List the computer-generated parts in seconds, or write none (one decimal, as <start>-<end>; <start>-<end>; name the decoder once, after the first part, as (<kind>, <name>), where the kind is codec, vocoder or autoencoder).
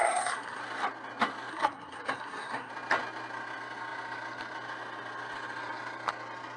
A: 0.0-0.6 (codec, SNAC); 1.5-2.7